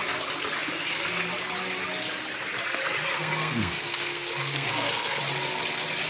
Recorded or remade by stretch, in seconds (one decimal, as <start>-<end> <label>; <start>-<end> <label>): 0.0-3.1 recorded; 3.1-5.2 remade; 5.2-6.1 recorded